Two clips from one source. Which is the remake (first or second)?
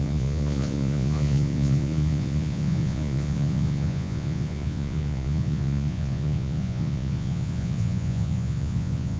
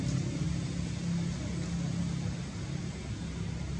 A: first